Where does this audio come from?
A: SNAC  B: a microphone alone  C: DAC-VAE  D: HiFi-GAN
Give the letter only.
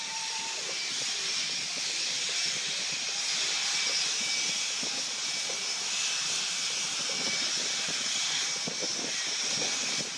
B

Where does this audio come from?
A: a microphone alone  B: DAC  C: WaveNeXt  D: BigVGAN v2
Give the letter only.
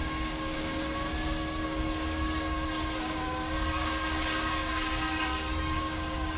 B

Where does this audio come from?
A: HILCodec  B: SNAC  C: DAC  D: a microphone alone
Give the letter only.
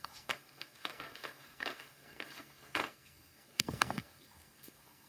B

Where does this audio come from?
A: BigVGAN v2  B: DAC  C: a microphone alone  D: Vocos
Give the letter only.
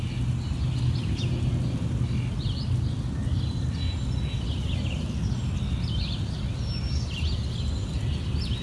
C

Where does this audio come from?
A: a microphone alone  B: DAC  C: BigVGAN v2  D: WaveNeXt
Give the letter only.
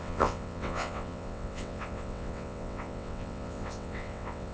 D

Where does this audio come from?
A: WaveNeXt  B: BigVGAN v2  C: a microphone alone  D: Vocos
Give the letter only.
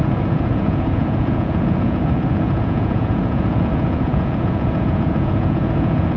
D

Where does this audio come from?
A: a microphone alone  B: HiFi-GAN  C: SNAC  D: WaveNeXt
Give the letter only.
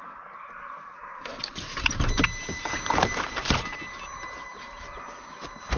A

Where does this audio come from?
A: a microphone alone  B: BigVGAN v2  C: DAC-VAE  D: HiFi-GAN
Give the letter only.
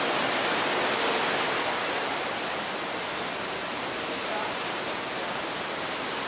A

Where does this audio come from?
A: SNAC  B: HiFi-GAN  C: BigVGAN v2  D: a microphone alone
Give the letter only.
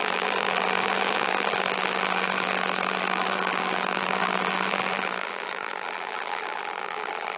C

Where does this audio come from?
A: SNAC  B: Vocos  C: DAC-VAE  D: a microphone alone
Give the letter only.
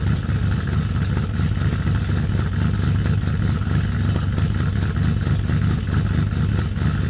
D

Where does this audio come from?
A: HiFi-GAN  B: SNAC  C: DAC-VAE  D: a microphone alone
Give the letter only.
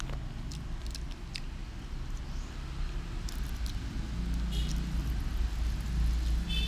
D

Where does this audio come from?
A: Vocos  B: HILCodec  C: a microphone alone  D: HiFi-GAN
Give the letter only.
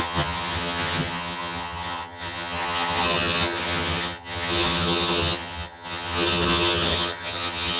D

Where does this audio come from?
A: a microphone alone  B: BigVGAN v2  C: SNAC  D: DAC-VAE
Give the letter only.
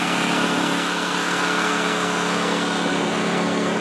C